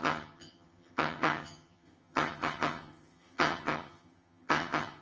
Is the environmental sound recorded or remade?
remade